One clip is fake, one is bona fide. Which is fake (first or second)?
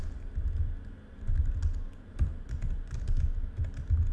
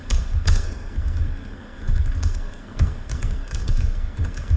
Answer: second